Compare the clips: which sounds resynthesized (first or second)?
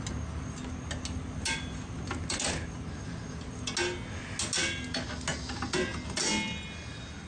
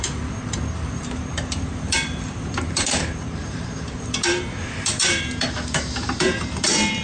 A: second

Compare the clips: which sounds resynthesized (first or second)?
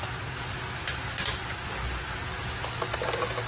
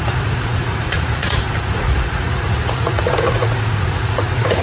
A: second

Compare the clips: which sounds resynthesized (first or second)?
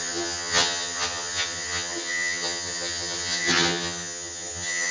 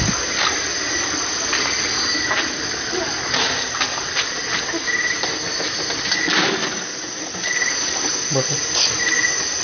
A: first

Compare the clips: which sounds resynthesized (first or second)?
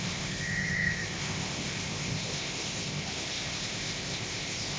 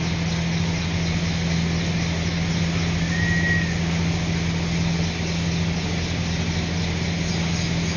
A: first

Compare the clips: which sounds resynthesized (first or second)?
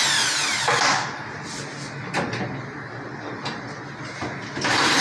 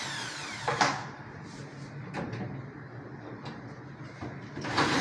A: second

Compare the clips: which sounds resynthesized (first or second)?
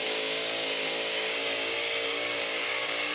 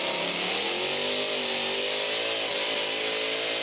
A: first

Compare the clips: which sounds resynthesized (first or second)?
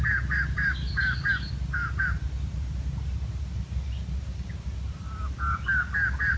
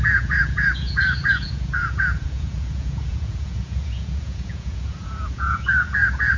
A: second